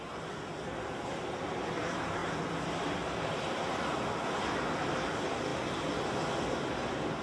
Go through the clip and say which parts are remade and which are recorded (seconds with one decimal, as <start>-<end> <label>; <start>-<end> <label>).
0.0-7.2 recorded